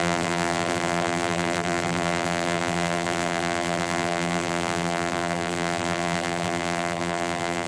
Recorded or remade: remade